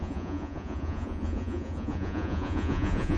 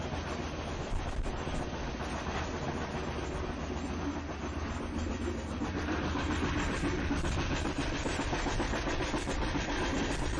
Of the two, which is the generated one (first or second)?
first